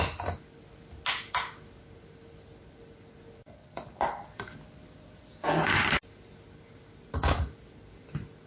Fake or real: real